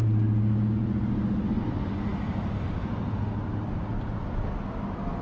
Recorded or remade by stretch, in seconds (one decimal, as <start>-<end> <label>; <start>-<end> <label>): 0.0-5.2 recorded